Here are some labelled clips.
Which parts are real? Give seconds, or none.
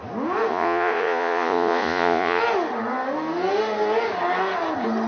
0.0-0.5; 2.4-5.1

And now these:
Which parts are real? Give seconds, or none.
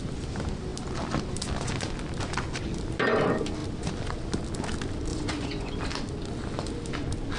0.0-5.1; 5.7-7.4